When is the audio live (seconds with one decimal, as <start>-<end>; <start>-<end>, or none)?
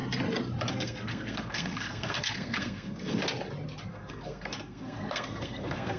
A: 0.0-0.7; 3.2-3.9